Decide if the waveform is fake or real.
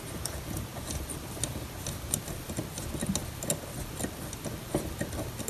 real